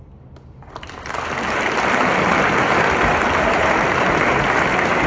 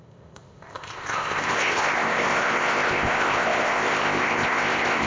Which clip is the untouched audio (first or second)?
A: first